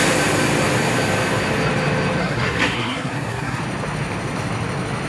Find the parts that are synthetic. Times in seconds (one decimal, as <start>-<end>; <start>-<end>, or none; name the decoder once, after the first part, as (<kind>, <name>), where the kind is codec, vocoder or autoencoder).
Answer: 2.2-3.6 (codec, SNAC)